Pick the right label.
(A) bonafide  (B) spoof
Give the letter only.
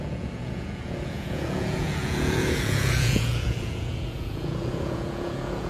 B